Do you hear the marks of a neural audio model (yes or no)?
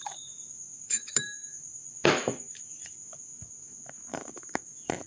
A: yes